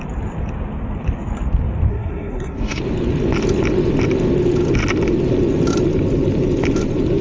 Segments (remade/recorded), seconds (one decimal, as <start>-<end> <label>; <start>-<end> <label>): 0.0-1.9 recorded; 1.9-2.8 remade; 2.8-7.2 recorded